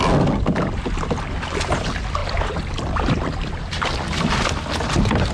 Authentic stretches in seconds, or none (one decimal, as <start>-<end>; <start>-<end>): 0.0-5.3